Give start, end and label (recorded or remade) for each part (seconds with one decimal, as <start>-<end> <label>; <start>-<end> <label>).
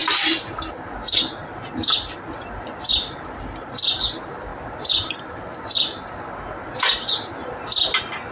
0.0-1.4 recorded; 1.4-2.0 remade; 2.0-4.5 recorded; 4.5-5.2 remade; 5.2-8.3 recorded